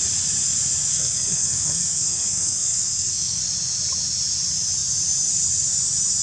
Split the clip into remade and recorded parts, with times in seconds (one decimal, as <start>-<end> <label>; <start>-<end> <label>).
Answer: 0.0-0.9 recorded; 0.9-3.4 remade; 3.4-6.2 recorded